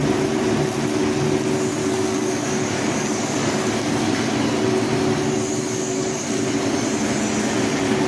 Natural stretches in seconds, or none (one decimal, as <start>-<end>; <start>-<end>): 0.0-1.8; 3.7-5.5; 6.5-8.1